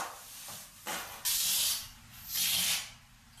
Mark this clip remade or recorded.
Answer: recorded